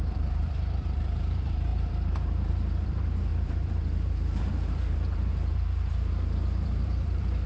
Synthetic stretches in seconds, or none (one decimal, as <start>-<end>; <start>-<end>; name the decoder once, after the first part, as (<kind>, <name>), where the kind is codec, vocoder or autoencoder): 0.0-7.5 (vocoder, BigVGAN v2)